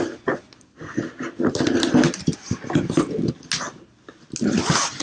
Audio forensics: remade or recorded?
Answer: recorded